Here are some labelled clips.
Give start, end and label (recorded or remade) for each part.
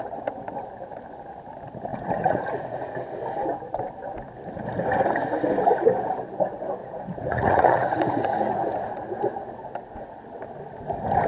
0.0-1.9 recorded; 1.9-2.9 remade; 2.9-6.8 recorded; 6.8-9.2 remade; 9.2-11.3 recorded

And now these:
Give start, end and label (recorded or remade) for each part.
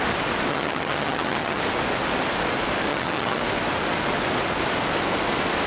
0.0-0.5 recorded; 0.5-1.6 remade; 1.6-2.9 recorded; 2.9-3.4 remade; 3.4-5.7 recorded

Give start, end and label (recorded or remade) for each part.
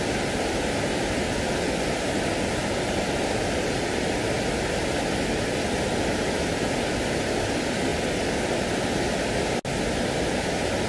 0.0-2.6 recorded; 2.6-4.5 remade; 4.5-10.9 recorded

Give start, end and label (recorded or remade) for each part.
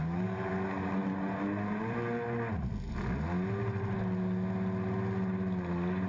0.0-0.5 remade; 0.5-6.1 recorded